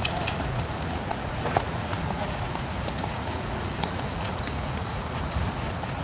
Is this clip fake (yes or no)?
yes